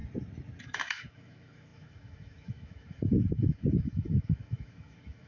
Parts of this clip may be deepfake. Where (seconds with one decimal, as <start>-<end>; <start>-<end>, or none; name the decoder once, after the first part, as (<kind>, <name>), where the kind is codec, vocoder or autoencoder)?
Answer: 0.6-5.3 (autoencoder, DAC-VAE)